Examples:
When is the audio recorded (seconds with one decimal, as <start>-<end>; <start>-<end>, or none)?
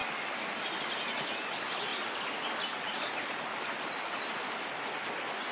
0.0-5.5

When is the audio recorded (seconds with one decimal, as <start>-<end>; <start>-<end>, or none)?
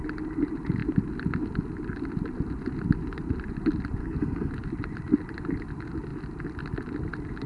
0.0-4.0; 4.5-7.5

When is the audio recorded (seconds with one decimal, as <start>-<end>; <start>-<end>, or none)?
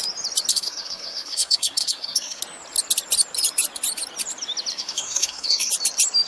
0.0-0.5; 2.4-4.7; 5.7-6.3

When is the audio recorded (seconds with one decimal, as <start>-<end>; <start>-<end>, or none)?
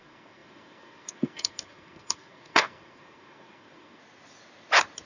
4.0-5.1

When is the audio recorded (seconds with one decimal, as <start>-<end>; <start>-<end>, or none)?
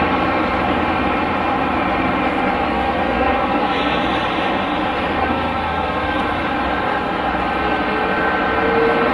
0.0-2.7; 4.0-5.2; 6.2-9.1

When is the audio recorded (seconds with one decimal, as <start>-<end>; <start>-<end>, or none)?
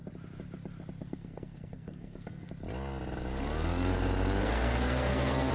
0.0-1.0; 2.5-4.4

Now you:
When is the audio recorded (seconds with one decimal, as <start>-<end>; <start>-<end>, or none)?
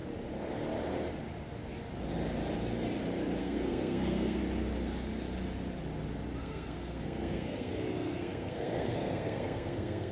0.0-3.4; 4.4-6.4